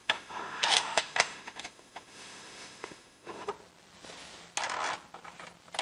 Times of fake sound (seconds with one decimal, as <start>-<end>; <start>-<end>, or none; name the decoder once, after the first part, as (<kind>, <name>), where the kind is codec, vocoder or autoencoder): 0.0-3.5 (autoencoder, DAC-VAE)